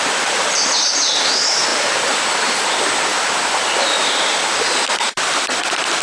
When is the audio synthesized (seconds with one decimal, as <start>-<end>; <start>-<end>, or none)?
1.7-2.7